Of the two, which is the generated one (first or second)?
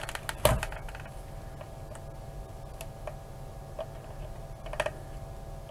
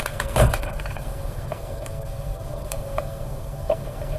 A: second